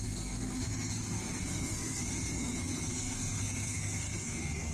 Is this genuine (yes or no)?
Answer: no